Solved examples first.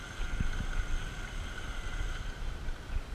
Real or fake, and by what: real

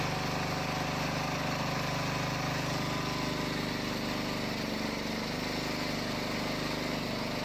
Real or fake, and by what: real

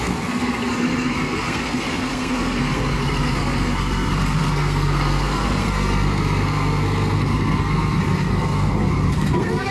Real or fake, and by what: fake, codec, SNAC